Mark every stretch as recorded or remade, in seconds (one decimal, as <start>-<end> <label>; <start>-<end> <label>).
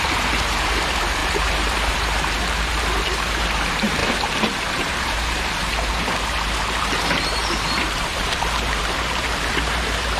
0.0-10.2 remade